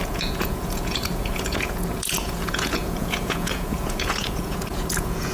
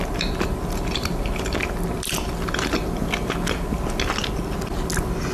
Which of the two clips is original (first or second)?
second